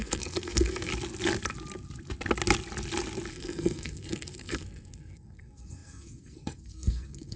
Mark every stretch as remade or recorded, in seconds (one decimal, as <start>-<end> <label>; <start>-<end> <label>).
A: 0.0-0.9 remade; 0.9-3.3 recorded; 3.3-7.4 remade